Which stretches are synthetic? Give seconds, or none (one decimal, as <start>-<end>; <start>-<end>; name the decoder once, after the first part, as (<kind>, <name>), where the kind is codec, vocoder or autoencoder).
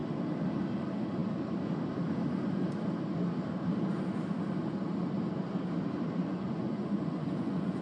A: 6.2-7.8 (vocoder, Vocos)